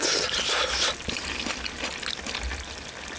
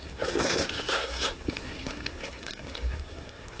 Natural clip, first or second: first